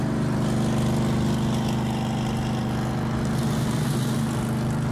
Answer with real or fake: real